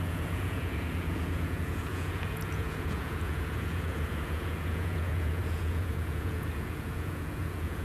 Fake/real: fake